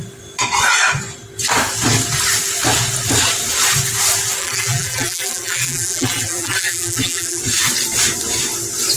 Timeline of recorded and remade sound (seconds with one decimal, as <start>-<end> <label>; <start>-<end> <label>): 0.0-4.4 recorded; 4.4-7.4 remade; 7.4-9.0 recorded